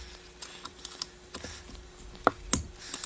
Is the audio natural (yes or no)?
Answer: yes